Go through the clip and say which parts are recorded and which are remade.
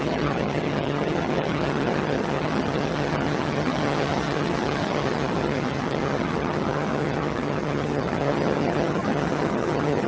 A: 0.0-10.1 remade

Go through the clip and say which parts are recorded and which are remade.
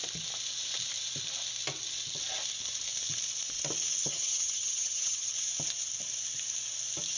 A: 0.0-4.0 recorded; 4.0-5.3 remade; 5.3-7.2 recorded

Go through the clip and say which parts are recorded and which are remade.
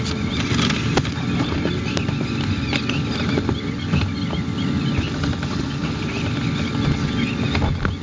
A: 0.0-8.0 recorded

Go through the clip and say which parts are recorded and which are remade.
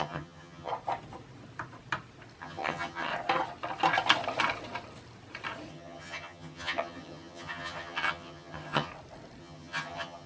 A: 0.0-0.7 remade; 0.7-2.4 recorded; 2.4-3.1 remade; 3.1-5.7 recorded; 5.7-8.9 remade; 8.9-9.4 recorded; 9.4-10.3 remade